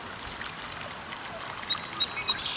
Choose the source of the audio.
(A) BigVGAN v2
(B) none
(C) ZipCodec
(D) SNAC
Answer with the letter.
B